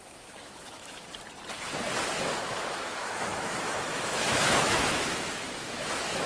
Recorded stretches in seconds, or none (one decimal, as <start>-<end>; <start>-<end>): 1.1-2.2